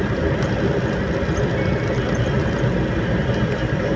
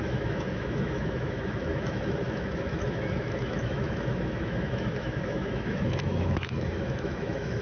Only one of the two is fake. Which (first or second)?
second